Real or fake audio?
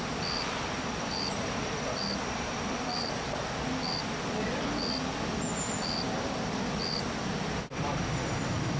real